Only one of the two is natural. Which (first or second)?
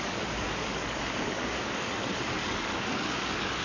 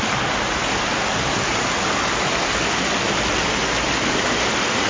second